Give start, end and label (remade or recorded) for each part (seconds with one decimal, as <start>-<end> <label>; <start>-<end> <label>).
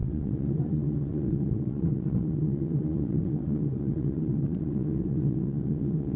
0.0-6.2 remade